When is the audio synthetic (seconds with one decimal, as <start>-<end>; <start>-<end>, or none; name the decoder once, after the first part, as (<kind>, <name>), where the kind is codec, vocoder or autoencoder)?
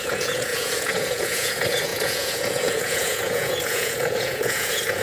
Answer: 0.0-5.0 (vocoder, Vocos)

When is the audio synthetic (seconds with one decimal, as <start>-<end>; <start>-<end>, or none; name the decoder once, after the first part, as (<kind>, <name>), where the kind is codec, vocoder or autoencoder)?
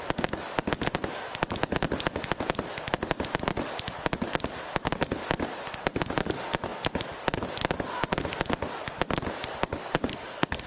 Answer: 10.1-10.7 (codec, SNAC)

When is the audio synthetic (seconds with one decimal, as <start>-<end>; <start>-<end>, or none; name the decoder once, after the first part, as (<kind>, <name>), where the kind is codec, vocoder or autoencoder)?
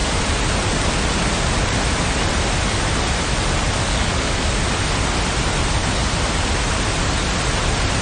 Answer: 3.9-4.5 (codec, DAC)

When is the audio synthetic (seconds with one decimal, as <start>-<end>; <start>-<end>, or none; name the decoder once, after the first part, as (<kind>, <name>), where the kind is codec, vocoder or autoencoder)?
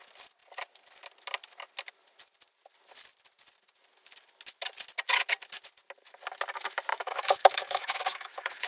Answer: 6.9-8.7 (autoencoder, DAC-VAE)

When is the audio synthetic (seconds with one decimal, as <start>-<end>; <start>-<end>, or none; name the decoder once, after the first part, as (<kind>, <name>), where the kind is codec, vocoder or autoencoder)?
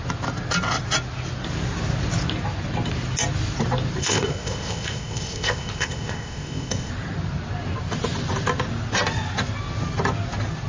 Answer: 4.0-6.9 (codec, ZipCodec)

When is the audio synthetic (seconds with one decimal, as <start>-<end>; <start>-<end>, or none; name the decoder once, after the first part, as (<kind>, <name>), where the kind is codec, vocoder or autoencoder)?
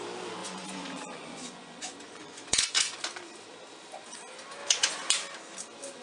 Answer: 0.4-3.0 (vocoder, Vocos); 4.6-5.1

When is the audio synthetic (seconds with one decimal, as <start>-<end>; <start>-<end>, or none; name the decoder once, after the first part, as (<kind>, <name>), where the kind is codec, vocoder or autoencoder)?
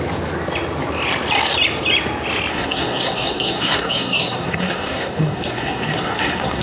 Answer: 2.5-6.6 (codec, SNAC)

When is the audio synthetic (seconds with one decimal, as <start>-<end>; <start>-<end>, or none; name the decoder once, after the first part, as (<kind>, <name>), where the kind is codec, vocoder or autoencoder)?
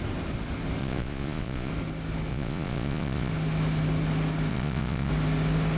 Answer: 0.8-1.7 (vocoder, Vocos); 2.3-3.3; 4.5-5.1